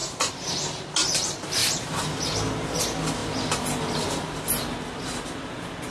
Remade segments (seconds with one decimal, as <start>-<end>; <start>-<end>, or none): 0.0-0.5; 1.6-2.8